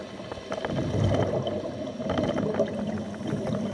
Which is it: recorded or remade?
recorded